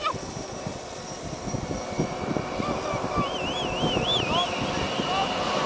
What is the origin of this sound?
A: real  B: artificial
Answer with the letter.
A